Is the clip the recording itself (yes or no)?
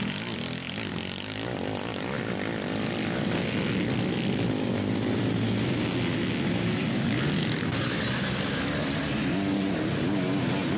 yes